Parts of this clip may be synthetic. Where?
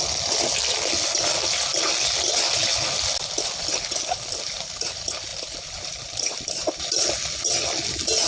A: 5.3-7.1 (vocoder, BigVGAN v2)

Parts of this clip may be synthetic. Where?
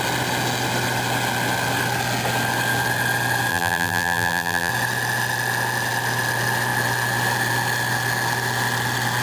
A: 3.5-4.7 (vocoder, BigVGAN v2)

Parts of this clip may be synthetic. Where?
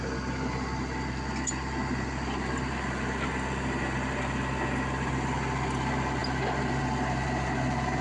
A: none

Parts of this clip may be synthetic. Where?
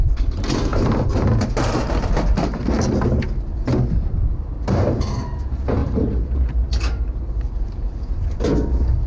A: 5.8-8.1 (vocoder, BigVGAN v2)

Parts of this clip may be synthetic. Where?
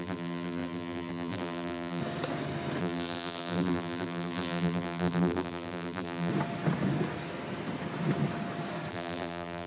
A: 0.0-2.0 (vocoder, BigVGAN v2); 2.8-6.3; 8.9-9.7